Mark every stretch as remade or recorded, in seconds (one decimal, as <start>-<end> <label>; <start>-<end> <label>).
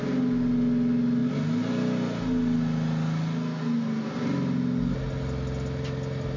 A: 0.0-6.4 recorded